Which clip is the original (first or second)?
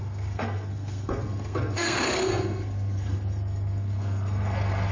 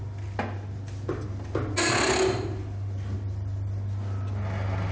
second